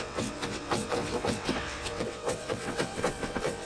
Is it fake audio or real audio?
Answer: fake